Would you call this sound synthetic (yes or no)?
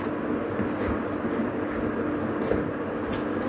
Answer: no